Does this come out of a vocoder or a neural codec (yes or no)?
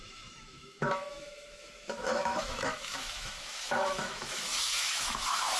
yes